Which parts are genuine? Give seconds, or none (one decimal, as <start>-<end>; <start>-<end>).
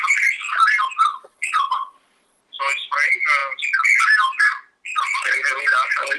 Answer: 0.0-1.1; 2.4-6.2